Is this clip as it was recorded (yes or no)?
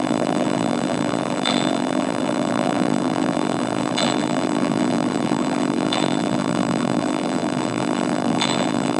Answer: no